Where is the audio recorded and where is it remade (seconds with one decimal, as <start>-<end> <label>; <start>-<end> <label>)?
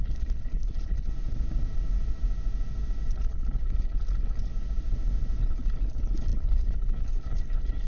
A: 0.0-1.1 remade; 1.1-3.1 recorded; 3.1-4.5 remade; 4.5-5.4 recorded; 5.4-7.9 remade